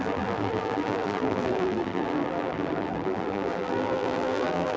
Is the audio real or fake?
fake